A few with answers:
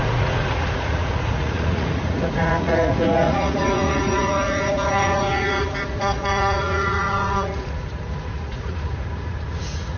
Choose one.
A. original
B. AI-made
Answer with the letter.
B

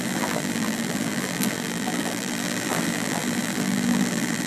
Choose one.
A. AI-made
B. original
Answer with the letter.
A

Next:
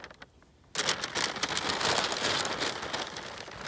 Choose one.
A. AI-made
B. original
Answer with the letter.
B